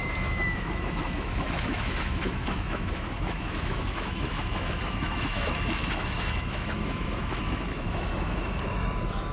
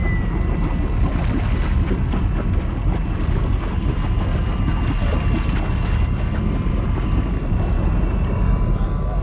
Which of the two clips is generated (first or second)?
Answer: first